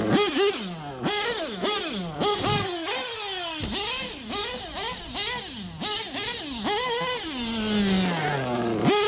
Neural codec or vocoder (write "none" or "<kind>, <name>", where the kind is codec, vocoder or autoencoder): none